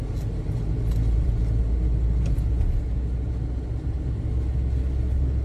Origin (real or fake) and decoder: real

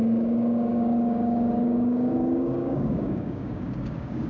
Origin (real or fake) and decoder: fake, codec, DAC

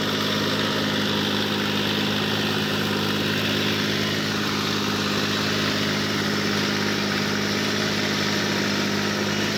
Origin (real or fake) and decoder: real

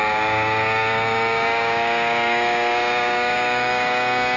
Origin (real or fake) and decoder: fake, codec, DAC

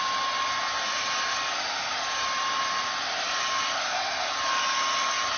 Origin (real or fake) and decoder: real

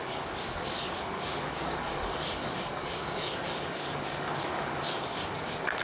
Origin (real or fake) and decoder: fake, codec, DAC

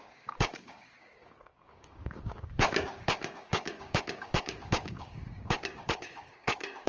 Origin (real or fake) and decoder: fake, codec, DAC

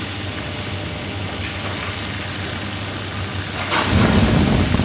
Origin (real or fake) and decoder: real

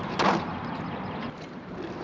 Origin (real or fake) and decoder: real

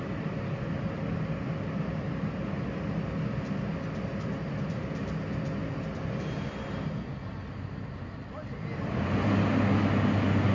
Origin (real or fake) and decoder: real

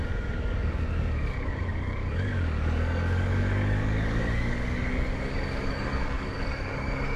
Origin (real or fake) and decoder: fake, codec, DAC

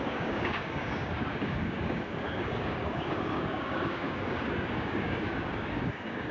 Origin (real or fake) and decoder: fake, codec, DAC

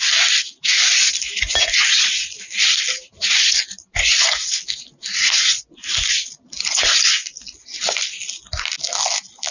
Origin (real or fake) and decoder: real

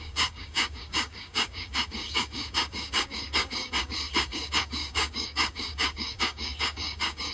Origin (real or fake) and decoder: fake, codec, DAC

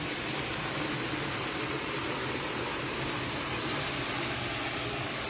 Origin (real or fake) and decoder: real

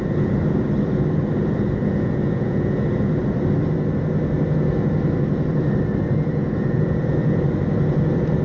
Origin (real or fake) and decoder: real